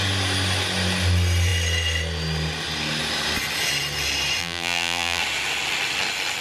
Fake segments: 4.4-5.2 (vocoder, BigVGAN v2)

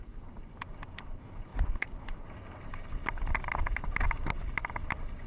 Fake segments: none

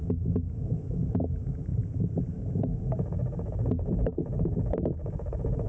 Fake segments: 0.0-1.7 (autoencoder, DAC-VAE); 2.3-5.7

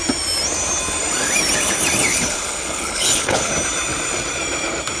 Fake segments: 2.1-3.5 (codec, HILCodec)

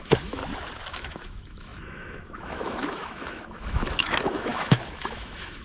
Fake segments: 0.0-0.4 (autoencoder, DAC-VAE); 0.9-5.6

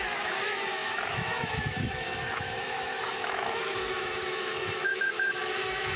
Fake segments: 0.0-6.0 (autoencoder, DAC-VAE)

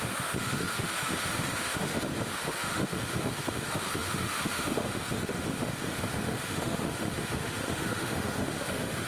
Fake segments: 0.0-9.1 (autoencoder, DAC-VAE)

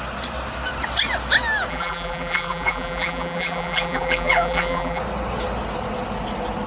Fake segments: 1.7-5.0 (vocoder, BigVGAN v2)